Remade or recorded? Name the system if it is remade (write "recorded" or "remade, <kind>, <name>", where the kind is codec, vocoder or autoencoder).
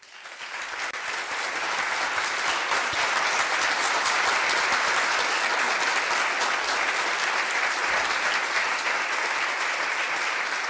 recorded